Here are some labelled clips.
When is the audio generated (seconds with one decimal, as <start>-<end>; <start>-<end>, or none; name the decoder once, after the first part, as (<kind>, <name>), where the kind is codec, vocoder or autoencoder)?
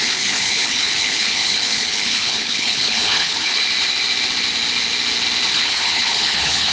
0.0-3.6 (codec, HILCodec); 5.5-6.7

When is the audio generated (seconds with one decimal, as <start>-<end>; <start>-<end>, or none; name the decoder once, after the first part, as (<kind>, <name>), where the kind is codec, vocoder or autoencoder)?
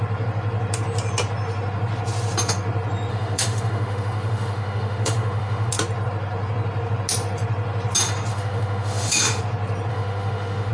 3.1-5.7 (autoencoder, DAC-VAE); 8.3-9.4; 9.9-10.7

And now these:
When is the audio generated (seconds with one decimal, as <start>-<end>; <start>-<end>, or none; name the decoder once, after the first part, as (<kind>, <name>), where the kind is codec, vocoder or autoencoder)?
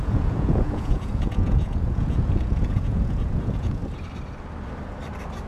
0.0-3.8 (vocoder, Vocos)